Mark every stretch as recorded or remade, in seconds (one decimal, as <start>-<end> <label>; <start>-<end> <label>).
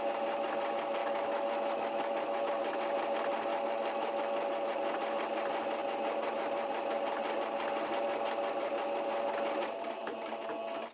0.0-1.0 recorded; 1.0-2.4 remade; 2.4-3.5 recorded; 3.5-4.5 remade; 4.5-10.9 recorded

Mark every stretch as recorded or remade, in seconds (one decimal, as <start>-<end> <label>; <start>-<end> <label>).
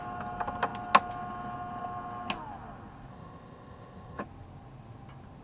0.0-3.1 recorded; 3.1-4.2 remade; 4.2-5.4 recorded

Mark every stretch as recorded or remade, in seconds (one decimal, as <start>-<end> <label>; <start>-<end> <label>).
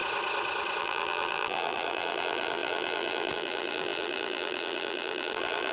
0.0-0.8 recorded; 0.8-5.7 remade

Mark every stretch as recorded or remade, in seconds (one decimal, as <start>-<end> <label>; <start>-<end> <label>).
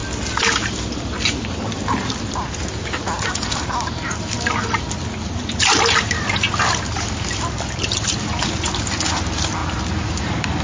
0.0-10.6 recorded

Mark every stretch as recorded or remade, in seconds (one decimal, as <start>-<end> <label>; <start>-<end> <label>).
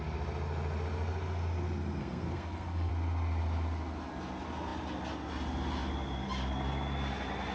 0.0-2.0 recorded; 2.0-2.9 remade; 2.9-7.5 recorded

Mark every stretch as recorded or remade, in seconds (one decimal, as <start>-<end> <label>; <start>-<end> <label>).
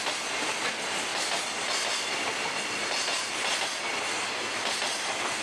0.0-1.1 recorded; 1.1-3.8 remade; 3.8-5.4 recorded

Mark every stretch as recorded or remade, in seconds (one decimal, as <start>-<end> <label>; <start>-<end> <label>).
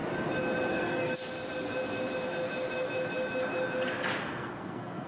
0.0-0.7 recorded; 0.7-1.2 remade; 1.2-4.2 recorded; 4.2-5.1 remade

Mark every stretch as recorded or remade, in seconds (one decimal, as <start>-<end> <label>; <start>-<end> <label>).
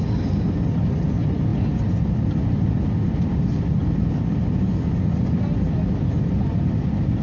0.0-7.2 recorded